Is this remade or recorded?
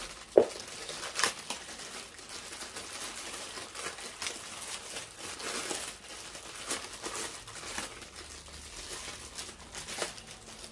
recorded